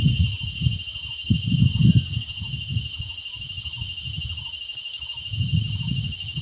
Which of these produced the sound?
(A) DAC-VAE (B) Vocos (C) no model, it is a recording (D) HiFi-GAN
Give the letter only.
C